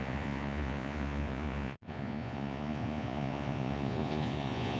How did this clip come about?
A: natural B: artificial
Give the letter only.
B